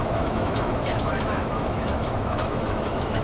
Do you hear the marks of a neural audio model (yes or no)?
yes